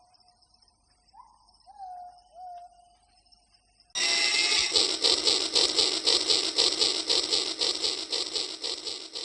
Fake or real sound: real